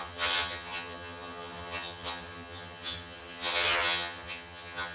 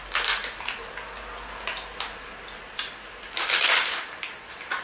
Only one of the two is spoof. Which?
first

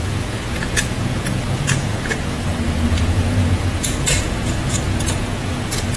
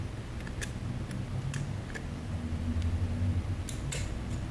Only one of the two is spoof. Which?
first